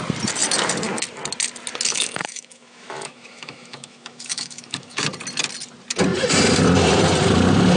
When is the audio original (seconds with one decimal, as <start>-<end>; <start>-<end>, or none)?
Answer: 0.0-1.9; 5.0-7.8